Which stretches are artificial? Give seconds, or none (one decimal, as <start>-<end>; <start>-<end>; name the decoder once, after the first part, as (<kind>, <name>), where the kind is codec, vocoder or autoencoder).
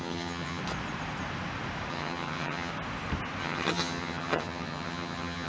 0.0-0.6 (vocoder, HiFi-GAN); 1.9-2.7; 3.4-5.5